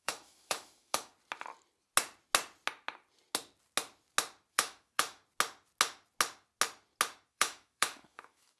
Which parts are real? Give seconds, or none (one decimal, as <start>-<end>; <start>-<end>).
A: 1.1-4.5; 5.2-7.3

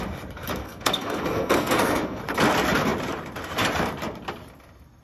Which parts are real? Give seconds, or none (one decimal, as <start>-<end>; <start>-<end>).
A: 0.0-0.6; 2.2-5.0

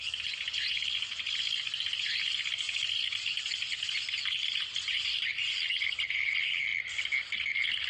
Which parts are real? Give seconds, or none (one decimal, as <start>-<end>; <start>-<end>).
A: 0.0-7.9

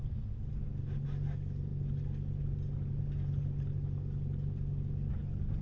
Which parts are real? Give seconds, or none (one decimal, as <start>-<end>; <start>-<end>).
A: 0.0-5.6